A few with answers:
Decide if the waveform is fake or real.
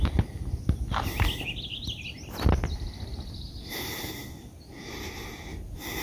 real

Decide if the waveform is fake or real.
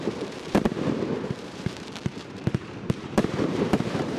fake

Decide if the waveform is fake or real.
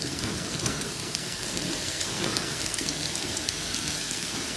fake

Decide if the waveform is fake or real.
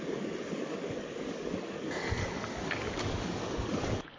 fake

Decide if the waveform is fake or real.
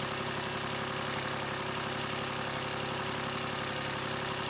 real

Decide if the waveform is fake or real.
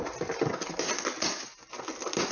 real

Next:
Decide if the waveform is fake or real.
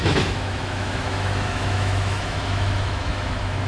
fake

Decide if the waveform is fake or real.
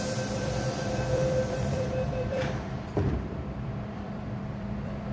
fake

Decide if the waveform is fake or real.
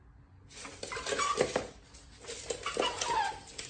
real